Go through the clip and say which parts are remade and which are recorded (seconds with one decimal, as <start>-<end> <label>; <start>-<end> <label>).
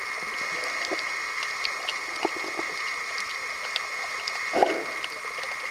0.0-5.7 recorded